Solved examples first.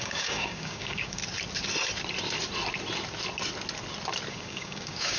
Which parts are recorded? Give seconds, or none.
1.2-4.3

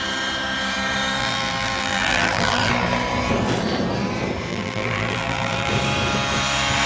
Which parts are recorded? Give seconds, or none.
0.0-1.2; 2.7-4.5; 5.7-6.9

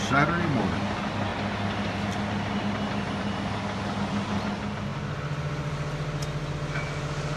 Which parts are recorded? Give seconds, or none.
0.0-7.4

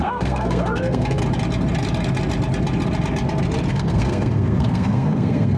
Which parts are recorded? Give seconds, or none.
1.2-3.7

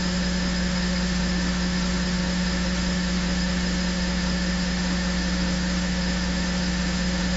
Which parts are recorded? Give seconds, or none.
none